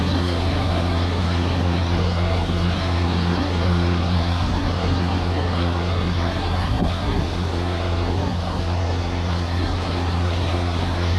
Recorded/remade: remade